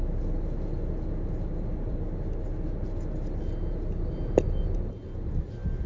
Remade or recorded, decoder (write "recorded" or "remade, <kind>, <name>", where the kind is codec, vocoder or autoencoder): recorded